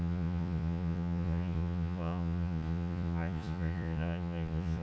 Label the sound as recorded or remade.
remade